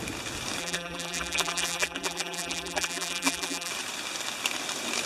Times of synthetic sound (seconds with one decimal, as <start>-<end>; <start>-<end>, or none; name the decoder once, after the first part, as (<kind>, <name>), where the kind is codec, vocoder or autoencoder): 0.6-3.7 (vocoder, BigVGAN v2)